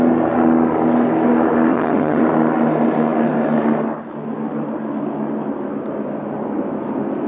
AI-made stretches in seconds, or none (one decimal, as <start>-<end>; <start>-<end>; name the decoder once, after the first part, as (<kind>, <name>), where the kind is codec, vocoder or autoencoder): 1.7-2.2 (vocoder, HiFi-GAN)